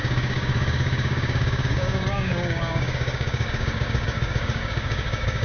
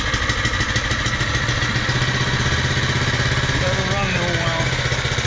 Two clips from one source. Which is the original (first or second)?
second